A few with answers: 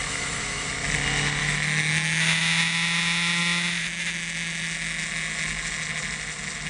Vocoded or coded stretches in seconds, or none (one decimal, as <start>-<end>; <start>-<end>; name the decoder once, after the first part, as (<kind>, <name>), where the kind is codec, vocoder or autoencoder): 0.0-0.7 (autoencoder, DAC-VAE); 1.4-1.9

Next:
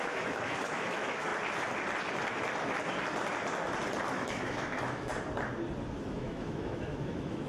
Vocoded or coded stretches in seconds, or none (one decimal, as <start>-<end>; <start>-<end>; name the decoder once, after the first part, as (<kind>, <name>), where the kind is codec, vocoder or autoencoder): 0.0-1.3 (autoencoder, DAC-VAE); 4.1-5.1; 6.1-7.5

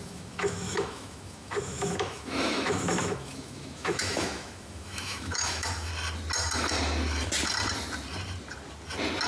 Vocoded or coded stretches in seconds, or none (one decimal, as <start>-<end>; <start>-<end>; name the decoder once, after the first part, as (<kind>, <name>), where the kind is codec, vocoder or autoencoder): 0.0-5.9 (autoencoder, DAC-VAE)

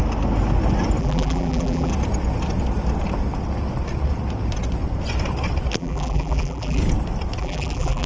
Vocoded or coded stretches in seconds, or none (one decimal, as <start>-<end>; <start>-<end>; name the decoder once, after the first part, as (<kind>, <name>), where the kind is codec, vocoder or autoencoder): 1.0-1.9 (vocoder, BigVGAN v2); 5.8-6.8; 7.4-8.1